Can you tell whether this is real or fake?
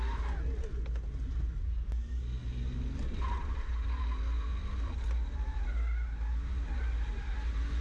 real